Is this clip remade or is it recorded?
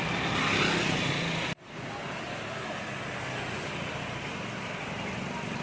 recorded